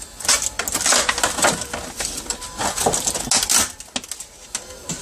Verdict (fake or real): real